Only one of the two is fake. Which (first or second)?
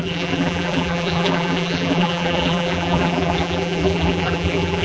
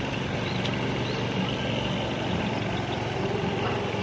first